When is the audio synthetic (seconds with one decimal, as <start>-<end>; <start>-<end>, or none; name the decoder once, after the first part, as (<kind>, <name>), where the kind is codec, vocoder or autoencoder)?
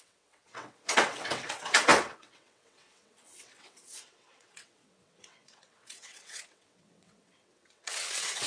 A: 0.0-8.5 (vocoder, WaveNeXt)